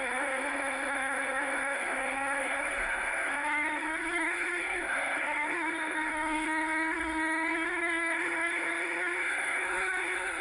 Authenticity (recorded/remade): remade